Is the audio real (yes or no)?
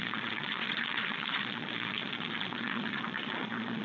no